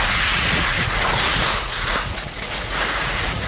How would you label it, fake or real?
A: fake